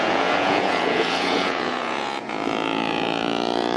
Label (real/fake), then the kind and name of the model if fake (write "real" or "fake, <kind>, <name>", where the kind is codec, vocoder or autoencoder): fake, vocoder, Vocos